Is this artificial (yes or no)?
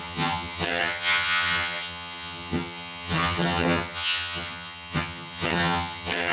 yes